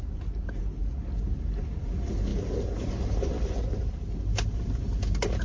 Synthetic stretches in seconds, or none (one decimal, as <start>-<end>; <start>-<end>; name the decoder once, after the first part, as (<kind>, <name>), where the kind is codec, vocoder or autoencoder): none